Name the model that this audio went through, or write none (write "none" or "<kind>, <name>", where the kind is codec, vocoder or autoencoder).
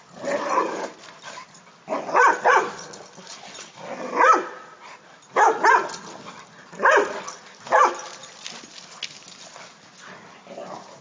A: none